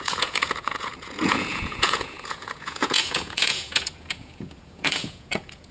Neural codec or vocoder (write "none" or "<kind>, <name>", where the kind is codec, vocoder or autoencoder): vocoder, Vocos